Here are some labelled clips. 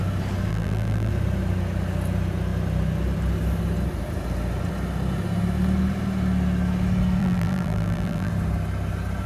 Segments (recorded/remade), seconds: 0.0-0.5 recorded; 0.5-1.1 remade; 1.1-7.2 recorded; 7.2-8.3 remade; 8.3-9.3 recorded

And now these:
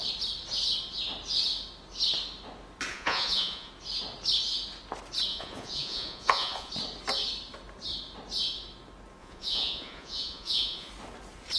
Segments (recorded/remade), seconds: 0.0-2.9 recorded; 2.9-3.7 remade; 3.7-5.3 recorded; 5.3-6.7 remade; 6.7-9.2 recorded; 9.2-10.9 remade; 10.9-11.6 recorded

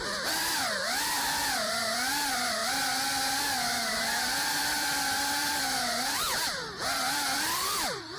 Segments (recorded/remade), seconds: 0.0-2.6 remade; 2.6-3.4 recorded; 3.4-8.2 remade